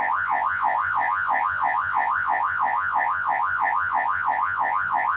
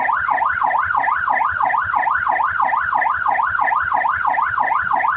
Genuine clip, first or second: second